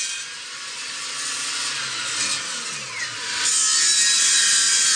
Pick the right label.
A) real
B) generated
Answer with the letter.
A